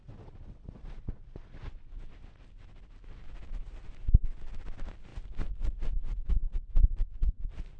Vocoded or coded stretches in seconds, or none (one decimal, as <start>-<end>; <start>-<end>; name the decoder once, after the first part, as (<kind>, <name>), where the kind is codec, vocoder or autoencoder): 0.0-1.9 (vocoder, Vocos)